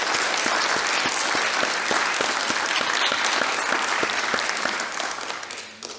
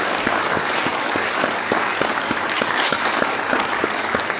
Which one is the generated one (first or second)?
second